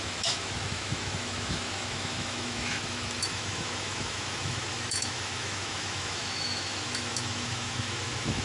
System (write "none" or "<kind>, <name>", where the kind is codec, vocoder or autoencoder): autoencoder, DAC-VAE